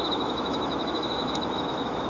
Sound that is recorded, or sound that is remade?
remade